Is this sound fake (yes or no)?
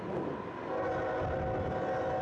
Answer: no